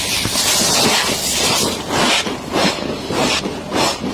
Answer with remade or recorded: recorded